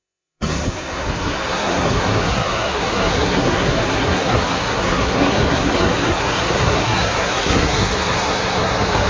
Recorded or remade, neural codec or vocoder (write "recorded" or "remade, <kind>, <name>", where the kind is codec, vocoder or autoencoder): remade, codec, SNAC